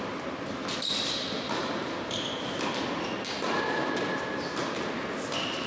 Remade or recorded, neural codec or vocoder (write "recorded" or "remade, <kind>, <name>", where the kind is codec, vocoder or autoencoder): recorded